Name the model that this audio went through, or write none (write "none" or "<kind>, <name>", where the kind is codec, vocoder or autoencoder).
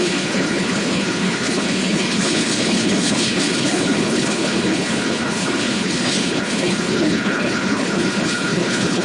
codec, HILCodec